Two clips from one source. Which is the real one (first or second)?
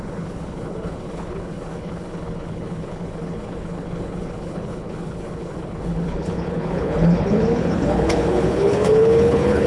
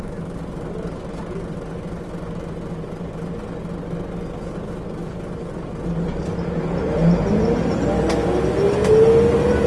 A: second